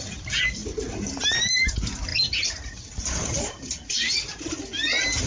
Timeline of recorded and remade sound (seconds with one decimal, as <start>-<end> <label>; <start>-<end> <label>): 0.0-5.3 recorded